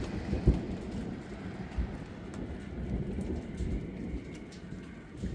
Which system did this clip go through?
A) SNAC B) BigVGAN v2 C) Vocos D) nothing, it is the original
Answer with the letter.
D